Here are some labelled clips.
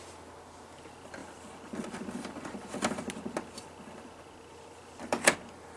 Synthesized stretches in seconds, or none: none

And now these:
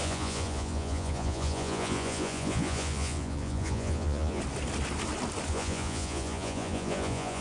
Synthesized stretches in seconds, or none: 0.0-4.4 (vocoder, Vocos); 5.5-7.4

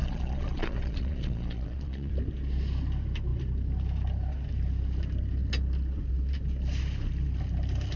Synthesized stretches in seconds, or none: 0.0-2.1 (vocoder, Vocos)

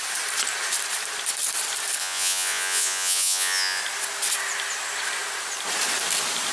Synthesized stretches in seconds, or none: 2.0-3.8 (vocoder, Vocos)

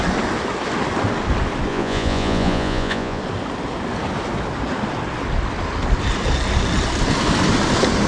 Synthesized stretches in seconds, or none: 1.7-3.2 (vocoder, Vocos)

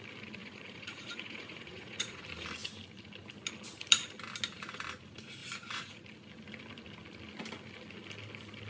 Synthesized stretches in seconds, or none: 0.4-2.2 (vocoder, Vocos); 5.4-6.0

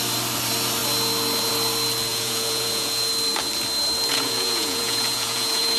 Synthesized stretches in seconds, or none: 2.1-3.1 (vocoder, Vocos); 4.1-5.8